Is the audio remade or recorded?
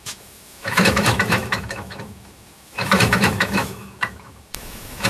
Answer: remade